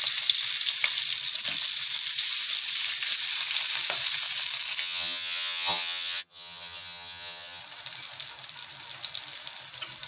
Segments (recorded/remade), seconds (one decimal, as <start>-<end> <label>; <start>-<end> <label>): 0.0-4.8 recorded; 4.8-7.6 remade; 7.6-10.1 recorded